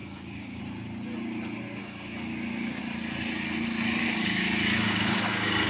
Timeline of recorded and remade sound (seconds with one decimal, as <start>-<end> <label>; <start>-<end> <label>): 0.0-0.6 remade; 0.6-1.8 recorded; 1.8-2.8 remade; 2.8-4.0 recorded; 4.0-5.7 remade